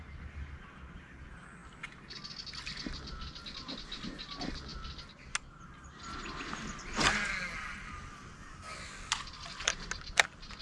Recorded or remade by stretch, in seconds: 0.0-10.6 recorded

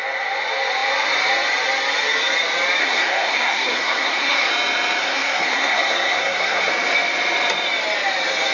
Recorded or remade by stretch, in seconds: 0.0-2.8 recorded; 2.8-4.5 remade; 4.5-5.0 recorded; 5.0-6.7 remade; 6.7-8.5 recorded

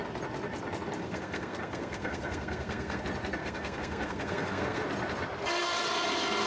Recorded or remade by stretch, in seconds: 0.0-1.0 recorded; 1.0-3.0 remade; 3.0-3.4 recorded; 3.4-4.8 remade; 4.8-6.5 recorded